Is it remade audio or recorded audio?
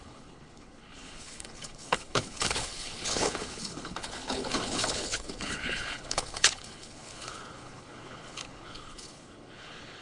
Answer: remade